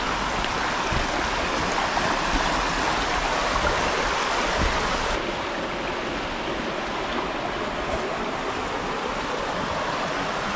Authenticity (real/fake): real